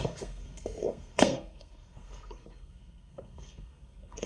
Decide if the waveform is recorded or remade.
remade